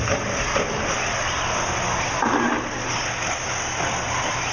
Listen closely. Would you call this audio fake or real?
real